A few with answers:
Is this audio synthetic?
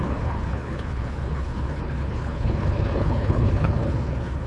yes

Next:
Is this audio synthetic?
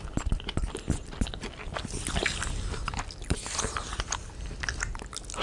no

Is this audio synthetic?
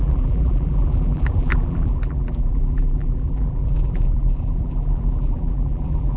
yes